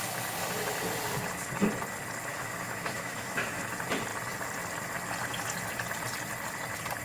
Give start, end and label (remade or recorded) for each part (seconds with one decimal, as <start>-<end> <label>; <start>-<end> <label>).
0.0-2.3 recorded; 2.3-3.6 remade; 3.6-7.0 recorded